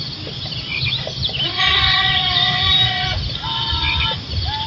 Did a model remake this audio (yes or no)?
no